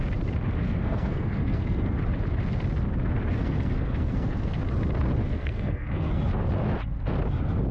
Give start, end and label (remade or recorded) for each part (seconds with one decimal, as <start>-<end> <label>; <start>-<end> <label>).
0.0-0.6 recorded; 0.6-2.0 remade; 2.0-3.4 recorded; 3.4-4.6 remade; 4.6-5.4 recorded; 5.4-6.2 remade; 6.2-7.7 recorded